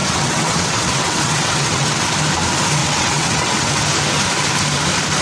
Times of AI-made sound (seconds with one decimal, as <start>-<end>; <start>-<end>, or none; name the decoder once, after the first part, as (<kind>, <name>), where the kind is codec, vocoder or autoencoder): 0.0-2.1 (vocoder, WaveNeXt); 2.8-3.8